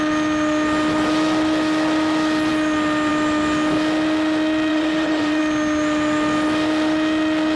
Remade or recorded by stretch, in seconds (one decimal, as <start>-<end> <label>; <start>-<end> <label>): 0.0-4.7 recorded; 4.7-5.4 remade; 5.4-7.6 recorded